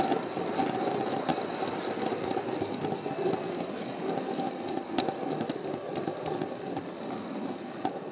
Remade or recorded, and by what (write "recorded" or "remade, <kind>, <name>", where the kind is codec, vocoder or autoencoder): recorded